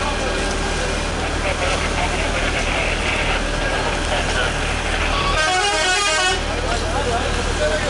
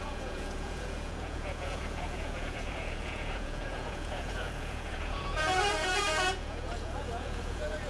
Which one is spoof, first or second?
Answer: second